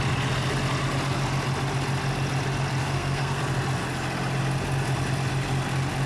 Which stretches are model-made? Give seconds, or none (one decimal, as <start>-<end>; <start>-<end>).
2.8-3.4

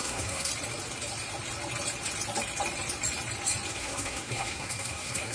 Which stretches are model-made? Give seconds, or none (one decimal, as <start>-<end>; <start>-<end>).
0.0-0.5; 3.7-5.3

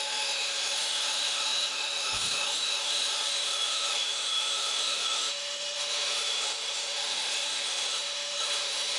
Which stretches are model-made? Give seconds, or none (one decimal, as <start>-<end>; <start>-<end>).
0.0-9.0

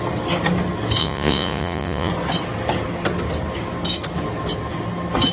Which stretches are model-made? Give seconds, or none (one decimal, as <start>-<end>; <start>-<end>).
1.0-2.1

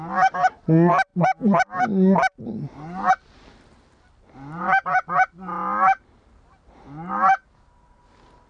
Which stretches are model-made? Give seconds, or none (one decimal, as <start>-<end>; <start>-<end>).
none